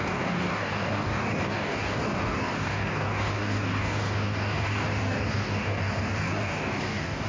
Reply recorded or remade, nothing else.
remade